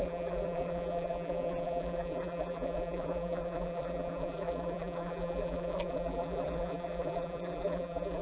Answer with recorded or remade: remade